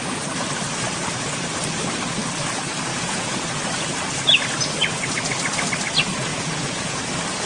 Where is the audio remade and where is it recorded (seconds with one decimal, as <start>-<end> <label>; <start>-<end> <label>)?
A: 0.0-2.9 recorded; 2.9-3.5 remade; 3.5-6.3 recorded; 6.3-7.0 remade; 7.0-7.5 recorded